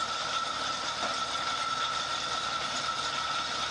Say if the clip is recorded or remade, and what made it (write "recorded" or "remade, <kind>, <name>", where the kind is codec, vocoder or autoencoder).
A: recorded